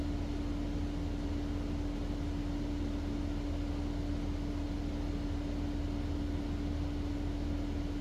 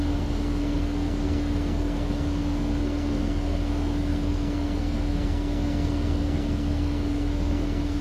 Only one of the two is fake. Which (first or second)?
second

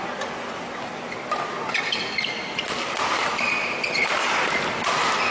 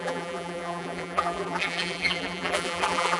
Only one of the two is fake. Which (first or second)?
second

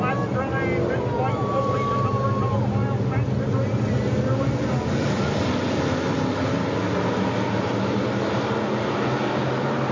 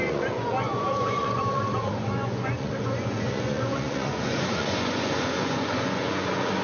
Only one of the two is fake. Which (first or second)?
second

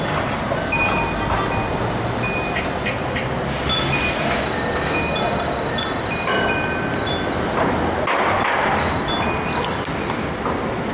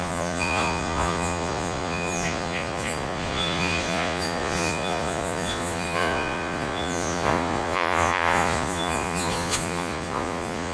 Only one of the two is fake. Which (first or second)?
second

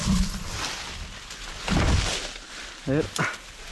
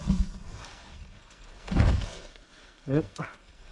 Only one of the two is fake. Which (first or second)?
second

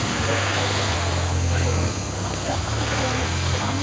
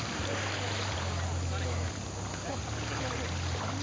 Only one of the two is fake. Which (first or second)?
first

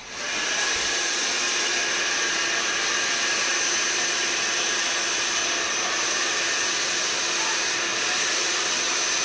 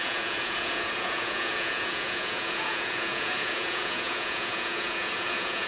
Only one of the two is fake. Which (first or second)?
second